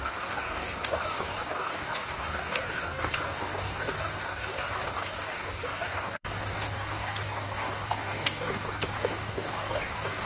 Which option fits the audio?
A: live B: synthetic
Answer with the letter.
B